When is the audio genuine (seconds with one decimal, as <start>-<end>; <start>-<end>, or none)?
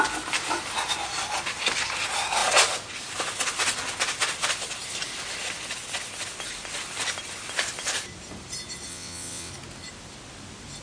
0.0-8.9; 9.5-10.8